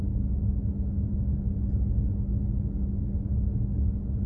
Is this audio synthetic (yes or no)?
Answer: no